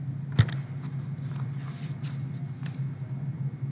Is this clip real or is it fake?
real